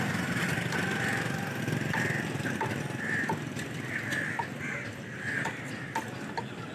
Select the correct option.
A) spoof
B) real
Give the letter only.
B